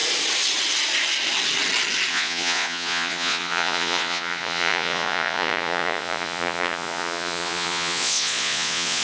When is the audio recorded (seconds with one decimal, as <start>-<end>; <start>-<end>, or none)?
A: 0.0-2.1